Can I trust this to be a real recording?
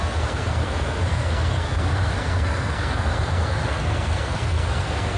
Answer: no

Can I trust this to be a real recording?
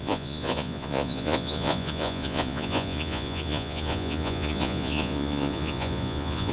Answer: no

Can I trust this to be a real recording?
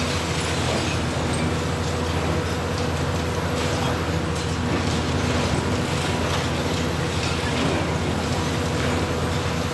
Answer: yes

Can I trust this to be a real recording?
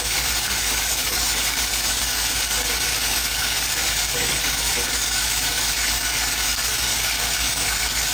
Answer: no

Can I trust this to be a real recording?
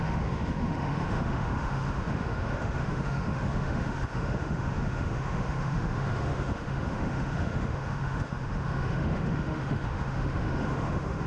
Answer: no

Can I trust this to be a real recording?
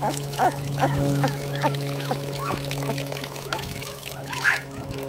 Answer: no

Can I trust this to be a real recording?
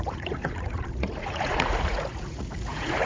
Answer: no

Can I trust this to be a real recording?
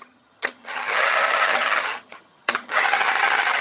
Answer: no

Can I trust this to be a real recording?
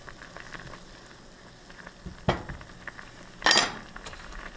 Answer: yes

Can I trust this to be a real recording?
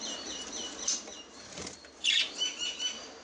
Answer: no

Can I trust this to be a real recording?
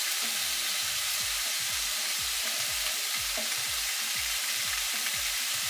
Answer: no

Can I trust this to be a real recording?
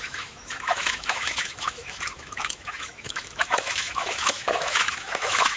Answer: no